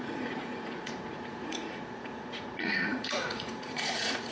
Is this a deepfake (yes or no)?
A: yes